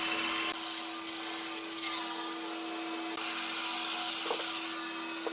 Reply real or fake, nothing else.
real